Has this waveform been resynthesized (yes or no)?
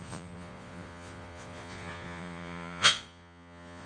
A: yes